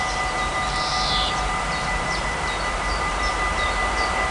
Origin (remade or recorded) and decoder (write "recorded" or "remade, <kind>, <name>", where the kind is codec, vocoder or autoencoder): remade, vocoder, BigVGAN v2